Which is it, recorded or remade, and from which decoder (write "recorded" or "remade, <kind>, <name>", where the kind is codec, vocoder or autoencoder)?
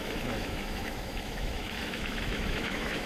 remade, autoencoder, DAC-VAE